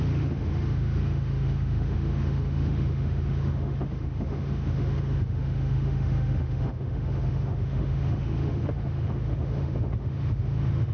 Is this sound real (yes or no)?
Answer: no